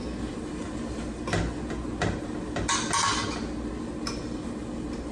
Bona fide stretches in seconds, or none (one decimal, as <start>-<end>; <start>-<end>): 0.0-5.1